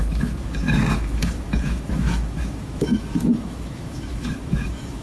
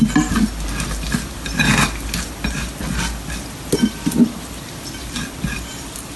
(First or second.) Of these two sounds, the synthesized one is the first